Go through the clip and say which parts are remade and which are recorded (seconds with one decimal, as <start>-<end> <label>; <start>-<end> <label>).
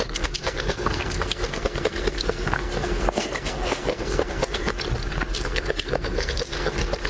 0.0-4.7 remade; 4.7-5.3 recorded; 5.3-7.1 remade